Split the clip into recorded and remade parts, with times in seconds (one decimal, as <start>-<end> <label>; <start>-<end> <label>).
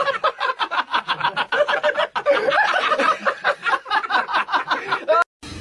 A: 0.0-5.6 recorded